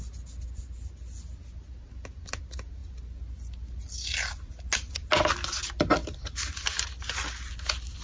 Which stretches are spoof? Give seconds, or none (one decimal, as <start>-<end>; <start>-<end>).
none